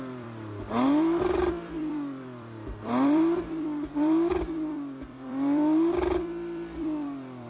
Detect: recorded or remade remade